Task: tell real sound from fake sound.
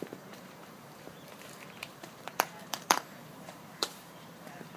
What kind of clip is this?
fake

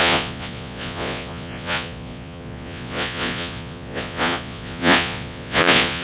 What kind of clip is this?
fake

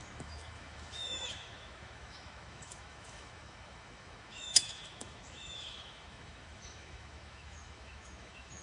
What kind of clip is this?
fake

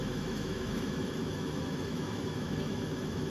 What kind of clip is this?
fake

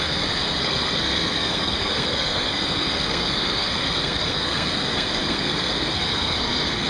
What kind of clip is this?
fake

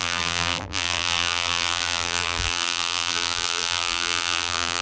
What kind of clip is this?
fake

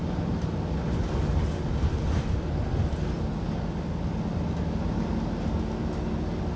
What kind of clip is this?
real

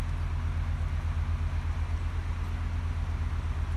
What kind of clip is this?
real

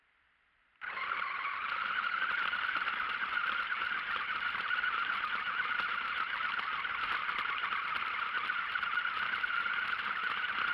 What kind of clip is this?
real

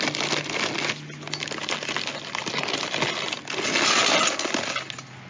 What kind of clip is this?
real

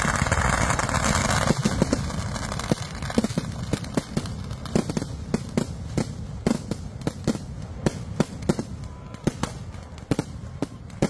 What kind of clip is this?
real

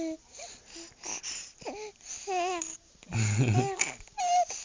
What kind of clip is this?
real